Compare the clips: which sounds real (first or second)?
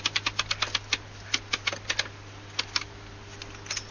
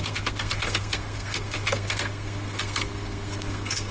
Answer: first